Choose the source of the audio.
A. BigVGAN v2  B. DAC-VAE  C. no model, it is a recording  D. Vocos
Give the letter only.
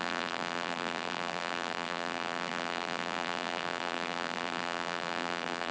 A